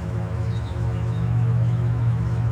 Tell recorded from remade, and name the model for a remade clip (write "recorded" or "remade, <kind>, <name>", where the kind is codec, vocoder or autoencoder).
remade, autoencoder, DAC-VAE